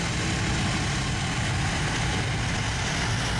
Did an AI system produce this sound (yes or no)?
no